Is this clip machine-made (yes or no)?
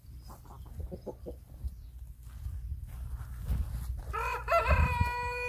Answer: no